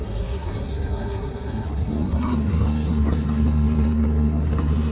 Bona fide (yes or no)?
no